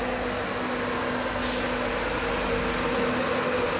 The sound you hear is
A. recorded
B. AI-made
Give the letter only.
A